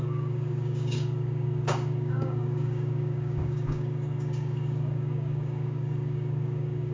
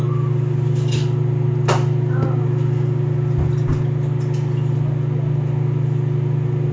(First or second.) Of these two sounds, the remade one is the first